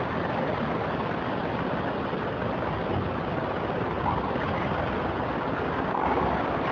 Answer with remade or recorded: recorded